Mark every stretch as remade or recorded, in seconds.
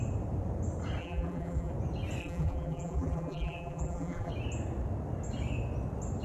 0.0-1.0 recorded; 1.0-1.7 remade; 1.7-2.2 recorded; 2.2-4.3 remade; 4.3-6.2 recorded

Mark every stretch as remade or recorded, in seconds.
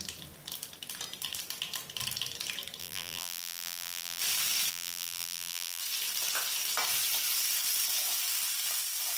0.0-2.8 recorded; 2.8-4.2 remade; 4.2-4.7 recorded; 4.7-5.8 remade; 5.8-9.2 recorded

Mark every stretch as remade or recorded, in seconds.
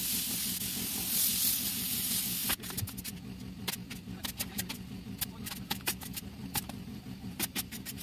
0.0-1.5 recorded; 1.5-2.4 remade; 2.4-5.6 recorded; 5.6-8.0 remade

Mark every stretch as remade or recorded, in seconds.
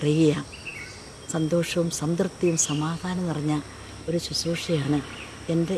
0.0-5.8 recorded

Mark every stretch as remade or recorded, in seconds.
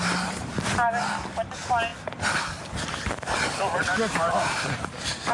0.0-5.3 recorded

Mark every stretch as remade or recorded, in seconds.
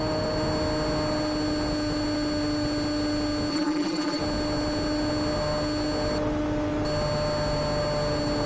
0.0-3.5 recorded; 3.5-4.2 remade; 4.2-8.5 recorded